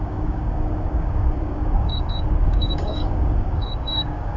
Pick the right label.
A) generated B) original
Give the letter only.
A